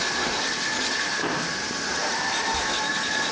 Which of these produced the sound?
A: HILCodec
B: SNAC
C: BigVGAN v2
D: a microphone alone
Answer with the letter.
C